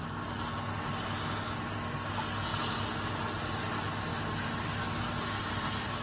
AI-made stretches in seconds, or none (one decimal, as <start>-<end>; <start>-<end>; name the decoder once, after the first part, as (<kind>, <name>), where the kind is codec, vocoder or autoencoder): none